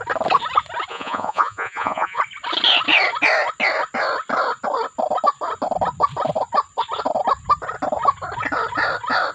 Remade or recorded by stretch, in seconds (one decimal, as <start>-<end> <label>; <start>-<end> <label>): 0.0-0.9 recorded; 0.9-2.2 remade; 2.2-9.3 recorded